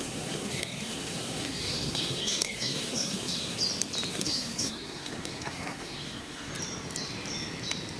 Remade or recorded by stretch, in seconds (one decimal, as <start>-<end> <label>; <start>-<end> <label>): 0.0-3.6 remade; 3.6-4.1 recorded; 4.1-6.5 remade; 6.5-8.0 recorded